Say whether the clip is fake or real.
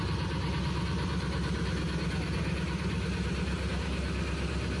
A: real